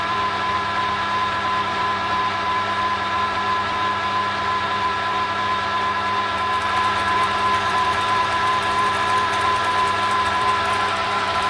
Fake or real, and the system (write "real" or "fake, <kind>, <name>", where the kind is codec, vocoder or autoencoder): fake, vocoder, BigVGAN v2